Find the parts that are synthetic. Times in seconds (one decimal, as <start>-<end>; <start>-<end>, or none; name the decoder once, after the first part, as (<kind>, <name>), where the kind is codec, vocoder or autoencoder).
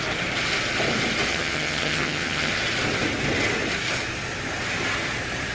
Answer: 1.3-2.5 (vocoder, HiFi-GAN)